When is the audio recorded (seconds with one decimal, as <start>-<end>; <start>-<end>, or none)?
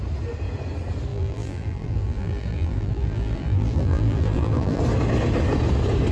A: 0.0-1.1; 4.8-6.1